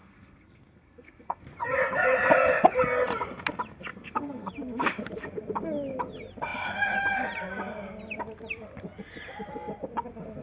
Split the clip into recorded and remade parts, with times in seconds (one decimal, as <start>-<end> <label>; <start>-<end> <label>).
0.0-1.4 remade; 1.4-3.9 recorded; 3.9-4.5 remade; 4.5-10.4 recorded